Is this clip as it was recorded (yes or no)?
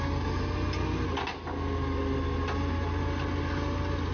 yes